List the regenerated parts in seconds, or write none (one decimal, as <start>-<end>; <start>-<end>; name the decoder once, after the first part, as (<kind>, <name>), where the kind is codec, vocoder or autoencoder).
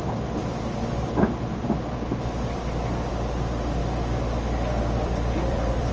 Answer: 3.8-5.9 (vocoder, BigVGAN v2)